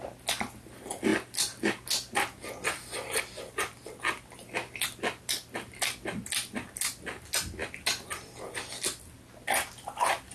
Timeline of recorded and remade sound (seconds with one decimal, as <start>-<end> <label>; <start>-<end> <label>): 0.0-10.3 recorded